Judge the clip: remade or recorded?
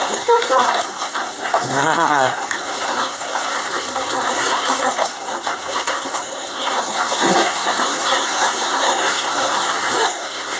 remade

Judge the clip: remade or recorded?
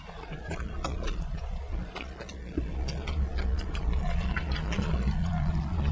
remade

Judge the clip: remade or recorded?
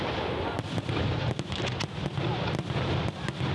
recorded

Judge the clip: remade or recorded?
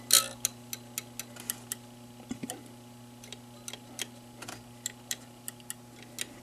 recorded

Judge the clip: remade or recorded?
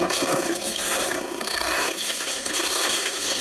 remade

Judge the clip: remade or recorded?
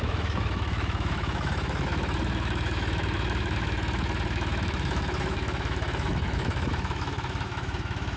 remade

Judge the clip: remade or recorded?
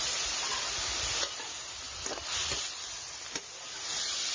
recorded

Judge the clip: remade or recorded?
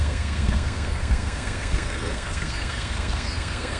remade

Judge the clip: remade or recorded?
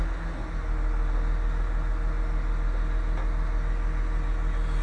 recorded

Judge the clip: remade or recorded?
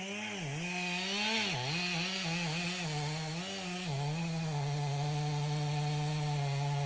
recorded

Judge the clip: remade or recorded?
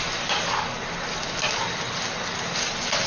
recorded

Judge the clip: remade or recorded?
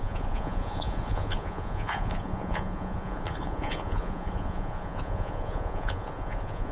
remade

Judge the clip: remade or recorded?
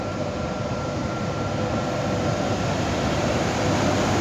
remade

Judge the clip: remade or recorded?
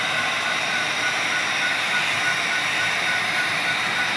remade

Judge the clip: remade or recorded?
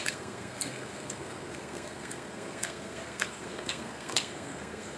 remade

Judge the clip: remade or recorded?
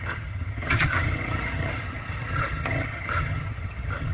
remade